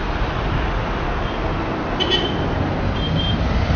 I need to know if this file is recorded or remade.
recorded